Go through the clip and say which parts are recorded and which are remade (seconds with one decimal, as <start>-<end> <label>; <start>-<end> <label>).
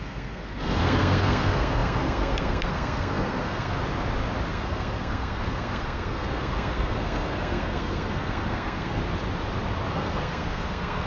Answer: 0.0-3.8 remade; 3.8-4.5 recorded; 4.5-9.0 remade; 9.0-9.9 recorded; 9.9-11.1 remade